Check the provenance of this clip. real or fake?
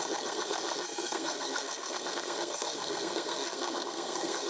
fake